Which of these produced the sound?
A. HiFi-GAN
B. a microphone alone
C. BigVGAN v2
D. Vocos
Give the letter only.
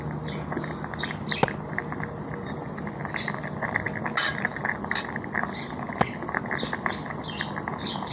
B